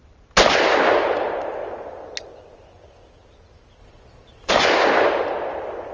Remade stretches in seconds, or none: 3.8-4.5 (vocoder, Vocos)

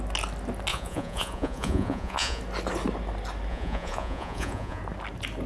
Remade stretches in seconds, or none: 0.7-2.4 (vocoder, Vocos); 3.5-4.8